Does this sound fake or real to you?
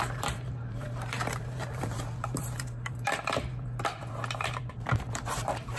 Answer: fake